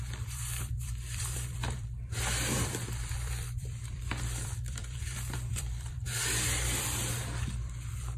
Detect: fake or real fake